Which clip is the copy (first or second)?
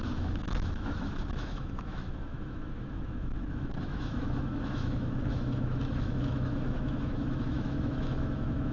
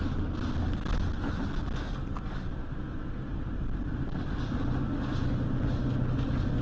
first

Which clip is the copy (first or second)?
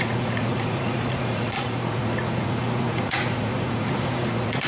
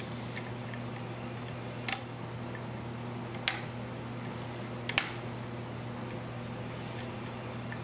first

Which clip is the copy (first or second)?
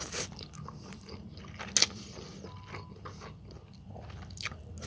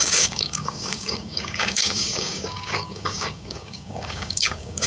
second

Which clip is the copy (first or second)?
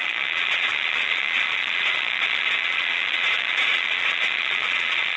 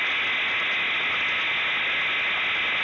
first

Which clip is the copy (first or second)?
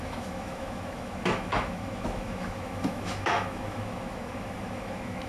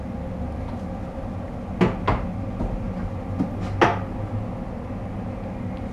first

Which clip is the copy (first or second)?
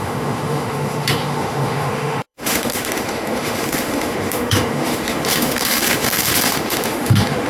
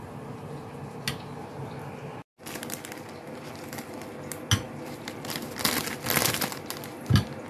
first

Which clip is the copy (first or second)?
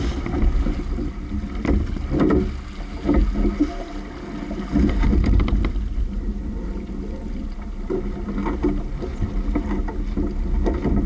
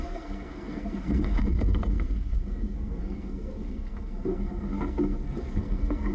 second